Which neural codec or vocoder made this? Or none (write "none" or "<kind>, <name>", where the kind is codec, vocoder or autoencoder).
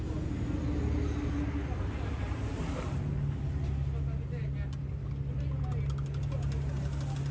none